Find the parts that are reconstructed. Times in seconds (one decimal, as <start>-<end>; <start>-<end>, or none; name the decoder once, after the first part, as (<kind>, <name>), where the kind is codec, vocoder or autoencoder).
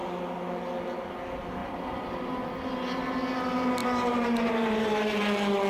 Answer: 1.6-2.3 (vocoder, BigVGAN v2); 3.8-5.2